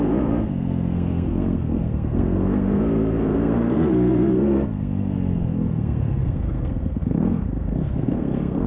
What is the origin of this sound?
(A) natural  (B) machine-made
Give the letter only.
B